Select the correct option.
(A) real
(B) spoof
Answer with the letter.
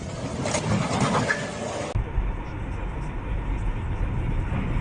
A